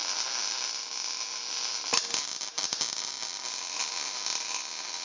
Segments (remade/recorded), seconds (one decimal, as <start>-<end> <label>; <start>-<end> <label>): 0.0-5.0 recorded